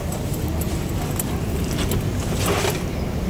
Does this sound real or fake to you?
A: real